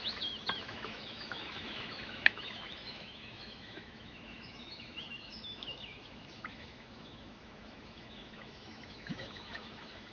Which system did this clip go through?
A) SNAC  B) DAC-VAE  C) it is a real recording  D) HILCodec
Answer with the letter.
B